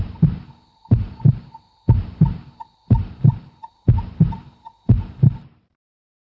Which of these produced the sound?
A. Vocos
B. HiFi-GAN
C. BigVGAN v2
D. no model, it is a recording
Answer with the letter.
C